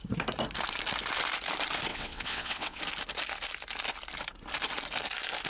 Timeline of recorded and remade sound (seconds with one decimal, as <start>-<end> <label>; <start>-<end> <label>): 0.0-1.9 recorded; 1.9-2.8 remade; 2.8-5.5 recorded